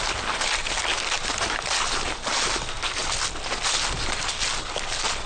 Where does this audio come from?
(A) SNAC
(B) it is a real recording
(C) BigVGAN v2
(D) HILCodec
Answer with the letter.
B